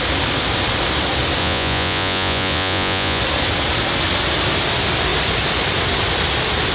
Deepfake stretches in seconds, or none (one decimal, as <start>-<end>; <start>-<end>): 1.4-3.2